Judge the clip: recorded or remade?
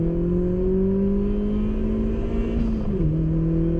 recorded